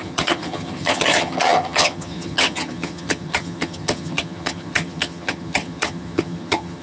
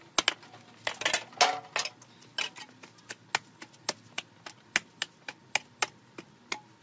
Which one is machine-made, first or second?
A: first